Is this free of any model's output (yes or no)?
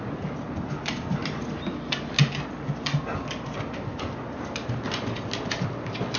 yes